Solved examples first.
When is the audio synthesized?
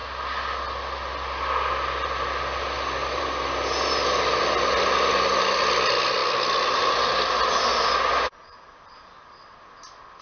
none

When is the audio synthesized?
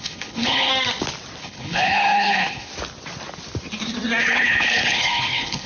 0.0-0.7; 1.4-2.7; 4.2-5.7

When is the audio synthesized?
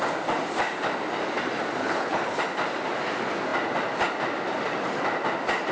1.8-2.4